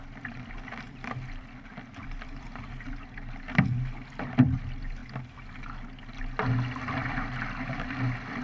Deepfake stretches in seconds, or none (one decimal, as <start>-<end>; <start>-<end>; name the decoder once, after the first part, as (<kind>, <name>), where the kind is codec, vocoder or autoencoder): none